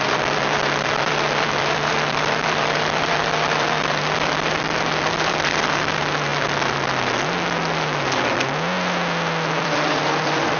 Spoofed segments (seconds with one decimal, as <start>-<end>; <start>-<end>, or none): 0.0-6.3; 9.5-10.6